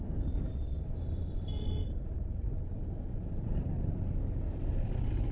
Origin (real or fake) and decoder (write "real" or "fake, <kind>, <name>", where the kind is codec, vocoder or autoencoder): real